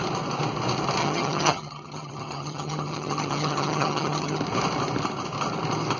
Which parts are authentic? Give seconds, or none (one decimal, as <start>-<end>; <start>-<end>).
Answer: 0.0-1.0; 4.4-6.0